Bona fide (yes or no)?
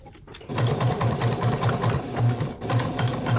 yes